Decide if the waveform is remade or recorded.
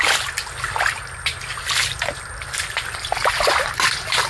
recorded